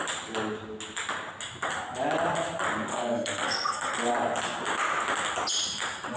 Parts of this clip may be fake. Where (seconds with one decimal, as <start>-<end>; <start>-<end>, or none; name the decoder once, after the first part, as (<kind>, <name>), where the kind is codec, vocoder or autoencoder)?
2.9-3.9 (codec, SNAC)